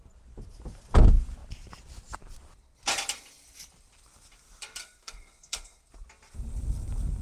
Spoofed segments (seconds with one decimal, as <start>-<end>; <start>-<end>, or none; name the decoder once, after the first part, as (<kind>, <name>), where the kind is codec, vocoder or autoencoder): 4.8-5.9 (codec, SNAC)